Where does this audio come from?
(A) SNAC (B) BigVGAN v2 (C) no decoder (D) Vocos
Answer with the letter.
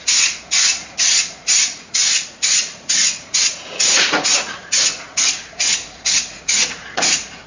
D